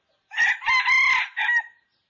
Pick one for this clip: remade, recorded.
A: recorded